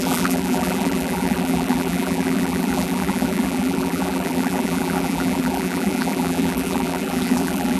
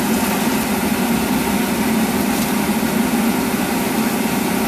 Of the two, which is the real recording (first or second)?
second